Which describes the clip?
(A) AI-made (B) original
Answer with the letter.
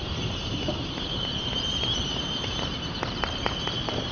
A